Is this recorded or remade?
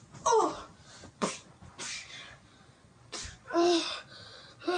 remade